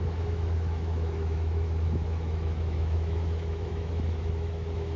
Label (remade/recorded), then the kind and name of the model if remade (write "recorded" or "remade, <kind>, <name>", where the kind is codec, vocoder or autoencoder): remade, autoencoder, DAC-VAE